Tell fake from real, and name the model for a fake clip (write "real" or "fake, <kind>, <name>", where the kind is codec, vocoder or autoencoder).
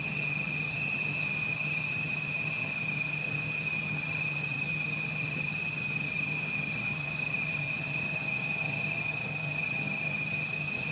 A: fake, vocoder, HiFi-GAN